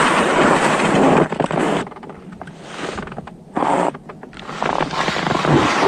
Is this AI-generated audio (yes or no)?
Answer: no